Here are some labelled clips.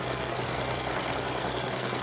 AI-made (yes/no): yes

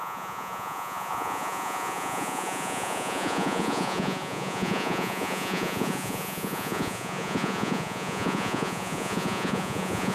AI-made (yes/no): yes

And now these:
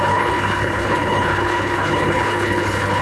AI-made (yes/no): yes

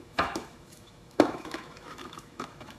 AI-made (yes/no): yes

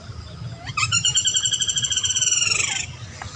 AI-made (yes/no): yes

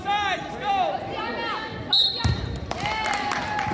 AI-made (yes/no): no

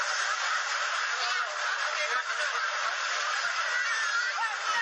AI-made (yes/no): no